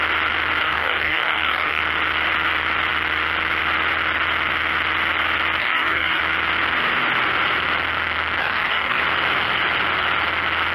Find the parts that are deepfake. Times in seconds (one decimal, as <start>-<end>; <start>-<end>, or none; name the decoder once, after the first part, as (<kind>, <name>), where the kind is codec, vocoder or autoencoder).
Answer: 0.6-1.8 (codec, DAC); 5.6-6.2; 8.4-9.0

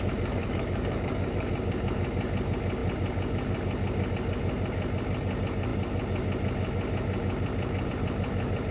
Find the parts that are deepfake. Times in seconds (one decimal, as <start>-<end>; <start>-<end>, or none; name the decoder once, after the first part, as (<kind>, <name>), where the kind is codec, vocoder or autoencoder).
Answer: 0.4-1.5 (codec, DAC)

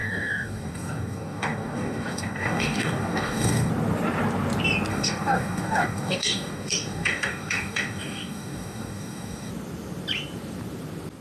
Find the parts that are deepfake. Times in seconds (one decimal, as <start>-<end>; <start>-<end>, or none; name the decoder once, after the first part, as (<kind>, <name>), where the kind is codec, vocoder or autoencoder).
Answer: 0.0-3.7 (codec, DAC); 4.9-9.5